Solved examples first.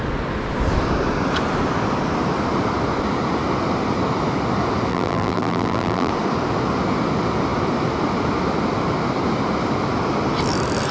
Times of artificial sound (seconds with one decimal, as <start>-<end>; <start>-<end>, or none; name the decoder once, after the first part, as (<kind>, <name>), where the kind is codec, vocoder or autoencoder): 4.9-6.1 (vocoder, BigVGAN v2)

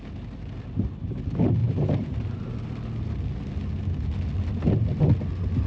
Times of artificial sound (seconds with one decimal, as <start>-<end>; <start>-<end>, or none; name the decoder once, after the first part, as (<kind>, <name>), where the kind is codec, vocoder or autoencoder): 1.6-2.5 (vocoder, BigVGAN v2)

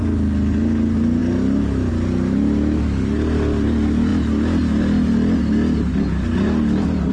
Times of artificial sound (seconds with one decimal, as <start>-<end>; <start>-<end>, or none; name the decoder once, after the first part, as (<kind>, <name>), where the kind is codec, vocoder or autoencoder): none

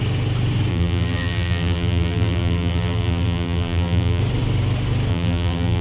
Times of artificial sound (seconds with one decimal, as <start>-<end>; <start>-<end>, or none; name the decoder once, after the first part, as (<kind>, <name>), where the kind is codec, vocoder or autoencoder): 0.7-4.2 (vocoder, BigVGAN v2); 5.1-5.8